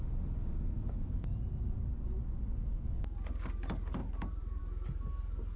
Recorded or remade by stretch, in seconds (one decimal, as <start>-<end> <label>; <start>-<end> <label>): 0.0-4.0 recorded; 4.0-4.6 remade; 4.6-5.6 recorded